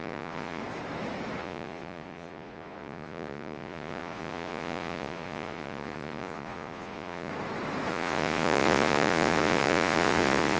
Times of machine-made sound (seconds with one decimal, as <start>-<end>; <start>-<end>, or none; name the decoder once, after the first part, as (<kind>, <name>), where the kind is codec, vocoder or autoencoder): 0.0-0.6 (vocoder, Vocos); 1.4-7.3; 7.9-10.6